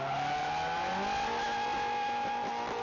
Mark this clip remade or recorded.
recorded